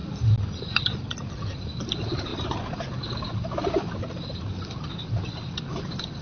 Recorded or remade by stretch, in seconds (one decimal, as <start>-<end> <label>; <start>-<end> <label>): 0.0-6.2 recorded